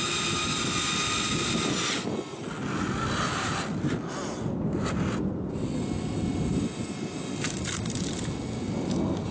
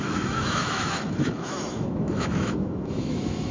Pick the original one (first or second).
first